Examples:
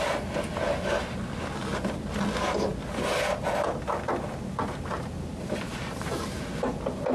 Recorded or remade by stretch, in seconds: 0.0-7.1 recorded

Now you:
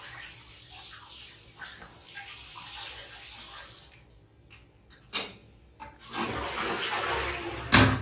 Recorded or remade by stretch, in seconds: 0.0-8.0 recorded

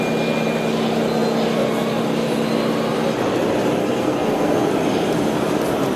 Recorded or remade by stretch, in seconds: 0.0-3.8 recorded; 3.8-4.7 remade; 4.7-6.0 recorded

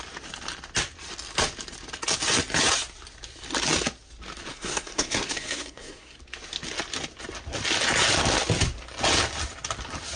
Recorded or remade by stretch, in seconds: 0.0-4.5 recorded; 4.5-6.2 remade; 6.2-10.2 recorded

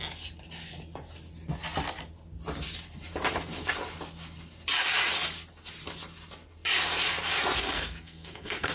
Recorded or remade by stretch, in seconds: 0.0-7.6 recorded; 7.6-8.7 remade

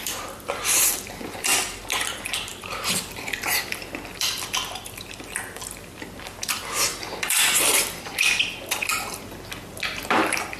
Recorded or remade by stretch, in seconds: 0.0-8.9 remade; 8.9-10.1 recorded; 10.1-10.6 remade

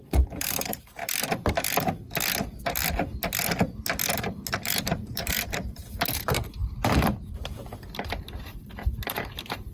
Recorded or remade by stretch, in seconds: 0.0-1.0 remade; 1.0-4.2 recorded; 4.2-9.7 remade

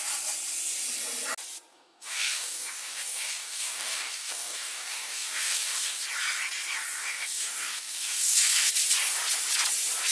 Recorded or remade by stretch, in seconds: 0.0-1.7 recorded; 1.7-6.0 remade; 6.0-7.0 recorded; 7.0-8.7 remade; 8.7-10.1 recorded